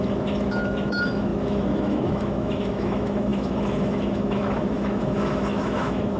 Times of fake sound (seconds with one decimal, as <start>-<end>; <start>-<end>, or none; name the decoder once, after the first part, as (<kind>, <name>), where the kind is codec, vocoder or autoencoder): 0.0-6.2 (autoencoder, DAC-VAE)